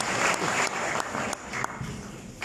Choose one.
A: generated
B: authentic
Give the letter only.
B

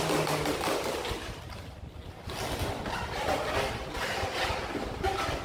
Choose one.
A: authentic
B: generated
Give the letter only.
A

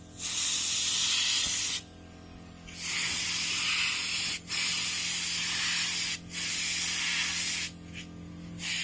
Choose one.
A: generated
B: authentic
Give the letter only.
B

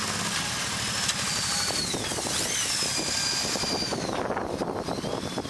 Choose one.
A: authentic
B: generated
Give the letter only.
A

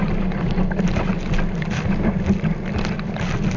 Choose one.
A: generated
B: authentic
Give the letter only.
B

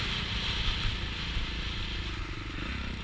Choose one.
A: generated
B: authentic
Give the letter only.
B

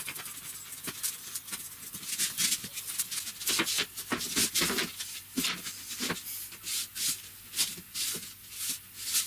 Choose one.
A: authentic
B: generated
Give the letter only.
A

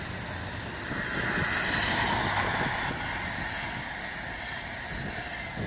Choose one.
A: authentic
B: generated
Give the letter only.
A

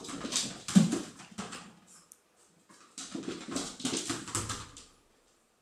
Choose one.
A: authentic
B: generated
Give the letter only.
B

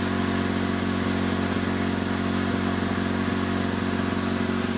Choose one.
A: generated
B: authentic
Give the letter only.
B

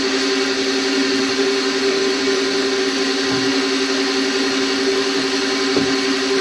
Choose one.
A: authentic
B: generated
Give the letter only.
A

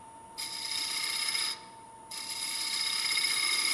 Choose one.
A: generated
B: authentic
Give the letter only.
A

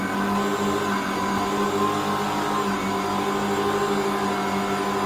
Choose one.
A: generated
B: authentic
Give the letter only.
B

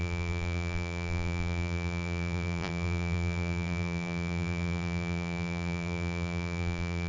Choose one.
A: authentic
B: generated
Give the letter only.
B